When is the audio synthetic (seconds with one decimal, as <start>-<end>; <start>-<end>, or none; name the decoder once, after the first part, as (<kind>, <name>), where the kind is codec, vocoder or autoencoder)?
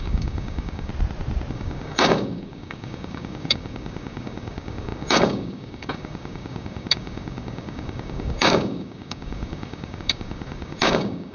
0.0-0.9 (codec, DAC); 1.5-11.3